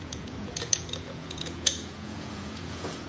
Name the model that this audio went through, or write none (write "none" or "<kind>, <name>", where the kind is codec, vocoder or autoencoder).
vocoder, Vocos